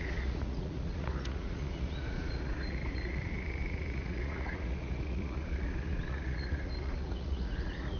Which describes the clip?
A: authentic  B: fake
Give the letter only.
B